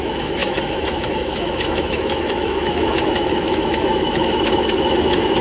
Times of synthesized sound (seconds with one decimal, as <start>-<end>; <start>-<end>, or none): 0.0-5.4